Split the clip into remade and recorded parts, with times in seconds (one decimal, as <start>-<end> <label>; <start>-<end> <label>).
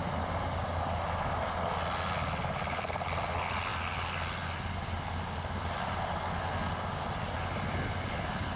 0.0-8.6 recorded